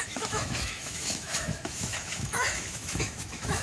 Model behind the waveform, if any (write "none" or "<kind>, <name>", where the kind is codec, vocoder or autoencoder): autoencoder, DAC-VAE